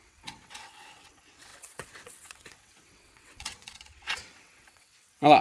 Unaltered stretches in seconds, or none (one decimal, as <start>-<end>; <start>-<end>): none